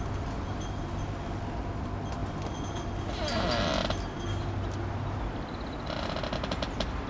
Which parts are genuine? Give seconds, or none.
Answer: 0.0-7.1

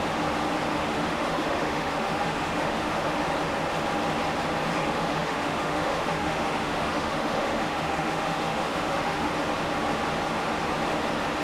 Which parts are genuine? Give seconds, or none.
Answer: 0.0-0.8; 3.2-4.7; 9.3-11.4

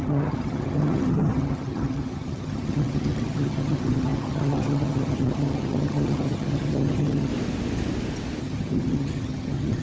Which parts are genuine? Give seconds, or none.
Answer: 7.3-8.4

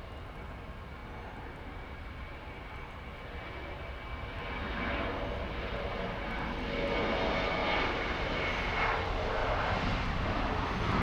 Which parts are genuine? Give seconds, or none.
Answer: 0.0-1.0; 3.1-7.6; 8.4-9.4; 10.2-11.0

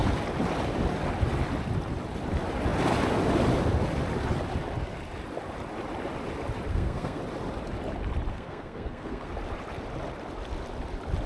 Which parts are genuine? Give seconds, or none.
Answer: 0.0-6.7; 7.2-8.3; 9.3-11.3

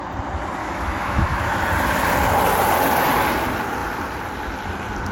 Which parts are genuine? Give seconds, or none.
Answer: 0.0-0.6; 1.6-5.1

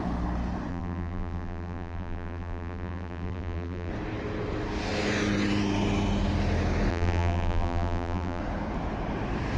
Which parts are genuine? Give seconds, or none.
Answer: 0.0-0.7; 3.9-6.9; 8.4-9.6